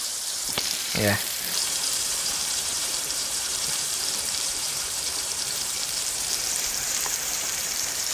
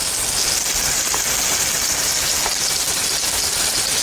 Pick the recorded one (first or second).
second